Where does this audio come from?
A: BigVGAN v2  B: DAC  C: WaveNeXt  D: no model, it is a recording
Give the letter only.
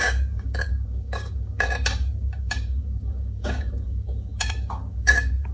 B